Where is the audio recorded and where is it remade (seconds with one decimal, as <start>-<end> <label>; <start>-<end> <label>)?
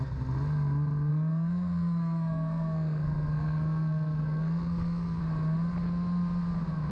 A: 0.0-1.1 recorded; 1.1-5.2 remade; 5.2-6.9 recorded